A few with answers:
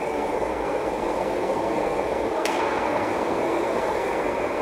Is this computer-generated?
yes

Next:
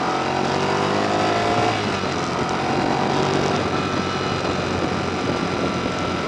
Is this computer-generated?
no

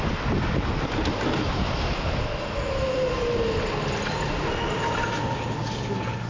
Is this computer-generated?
no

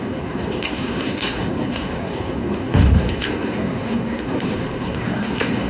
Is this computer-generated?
yes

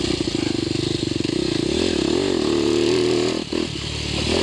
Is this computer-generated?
no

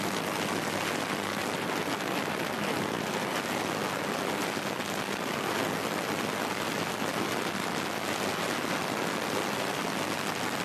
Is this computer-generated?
no